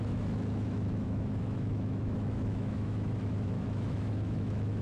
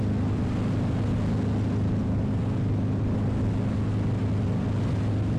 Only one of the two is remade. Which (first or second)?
first